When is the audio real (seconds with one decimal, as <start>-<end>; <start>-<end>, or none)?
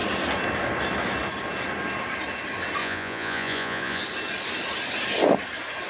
0.0-2.8; 4.0-5.9